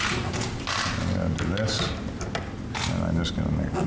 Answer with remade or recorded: recorded